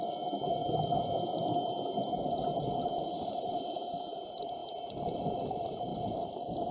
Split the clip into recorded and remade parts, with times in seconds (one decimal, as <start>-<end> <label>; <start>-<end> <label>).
0.0-6.7 recorded